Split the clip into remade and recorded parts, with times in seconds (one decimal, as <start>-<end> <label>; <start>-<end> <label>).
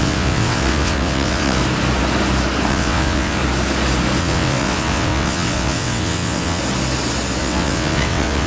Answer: 0.0-1.6 remade; 1.6-2.7 recorded; 2.7-3.4 remade; 3.4-4.2 recorded; 4.2-6.6 remade; 6.6-7.4 recorded; 7.4-8.5 remade